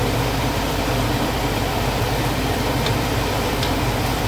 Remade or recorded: remade